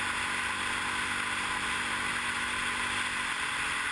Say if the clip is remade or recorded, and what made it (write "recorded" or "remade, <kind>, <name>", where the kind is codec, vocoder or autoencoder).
recorded